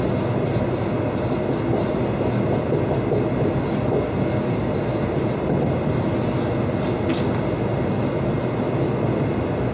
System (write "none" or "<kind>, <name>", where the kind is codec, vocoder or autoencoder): none